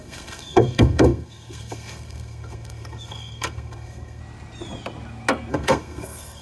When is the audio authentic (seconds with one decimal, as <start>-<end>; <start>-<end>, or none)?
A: 4.2-5.5

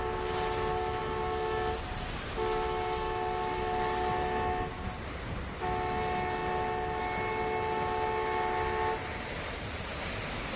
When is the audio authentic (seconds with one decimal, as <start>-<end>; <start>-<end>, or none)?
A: 0.0-10.6

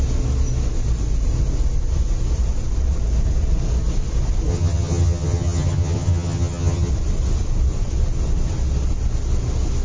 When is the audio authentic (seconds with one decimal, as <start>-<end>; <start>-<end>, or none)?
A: 0.0-4.5; 6.9-9.8

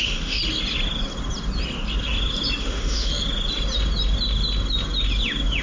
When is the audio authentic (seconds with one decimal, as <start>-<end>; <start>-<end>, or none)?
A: 0.4-2.6; 3.1-5.6

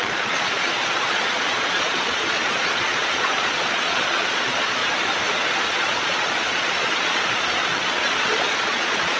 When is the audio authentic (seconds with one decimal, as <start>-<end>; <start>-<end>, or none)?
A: 4.8-5.6

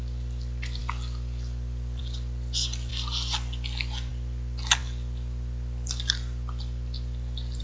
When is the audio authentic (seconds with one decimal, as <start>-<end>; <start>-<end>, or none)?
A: 0.0-0.8; 2.0-7.6

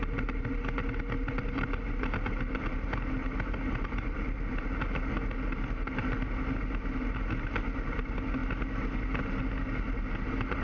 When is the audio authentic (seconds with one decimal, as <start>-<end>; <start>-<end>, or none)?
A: 0.0-10.6